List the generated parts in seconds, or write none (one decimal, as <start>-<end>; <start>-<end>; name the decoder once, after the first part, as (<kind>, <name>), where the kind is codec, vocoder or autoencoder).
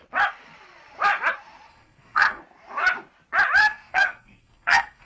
1.7-2.4 (codec, SNAC); 3.6-5.1